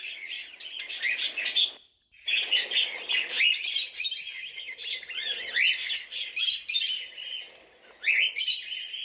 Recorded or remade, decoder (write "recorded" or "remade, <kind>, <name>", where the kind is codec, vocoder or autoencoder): recorded